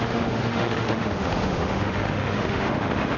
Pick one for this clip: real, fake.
fake